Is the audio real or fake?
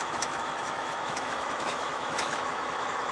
fake